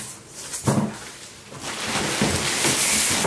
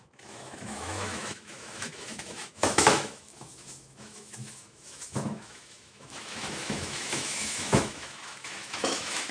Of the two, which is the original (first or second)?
first